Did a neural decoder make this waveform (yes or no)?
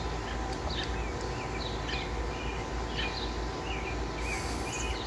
no